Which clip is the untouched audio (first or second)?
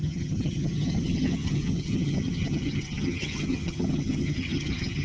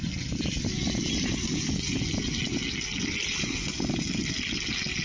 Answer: second